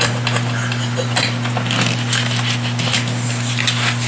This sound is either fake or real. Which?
real